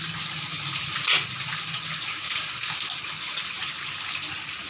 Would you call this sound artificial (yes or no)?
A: no